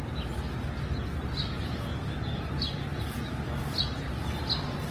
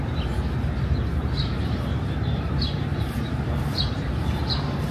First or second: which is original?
first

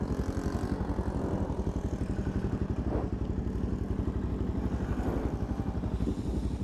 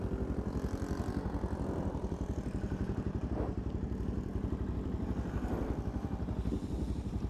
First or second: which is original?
first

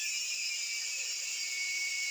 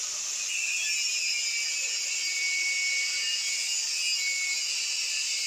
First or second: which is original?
second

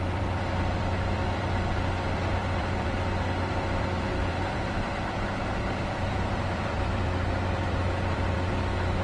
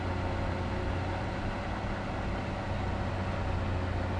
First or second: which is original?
second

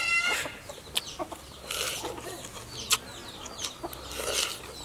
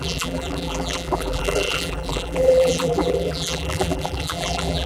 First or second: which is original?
first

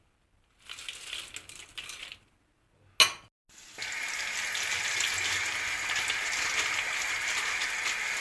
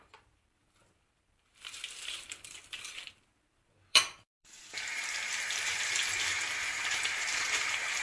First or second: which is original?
first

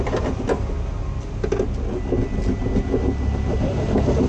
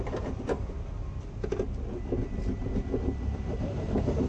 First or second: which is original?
first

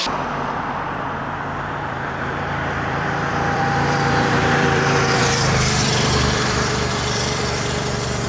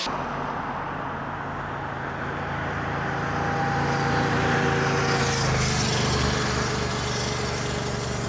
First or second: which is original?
second